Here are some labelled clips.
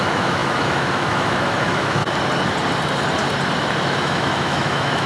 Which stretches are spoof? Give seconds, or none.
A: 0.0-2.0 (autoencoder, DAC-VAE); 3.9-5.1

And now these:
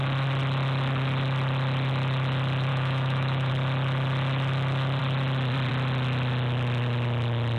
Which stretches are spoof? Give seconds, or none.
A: 2.7-3.5 (autoencoder, DAC-VAE)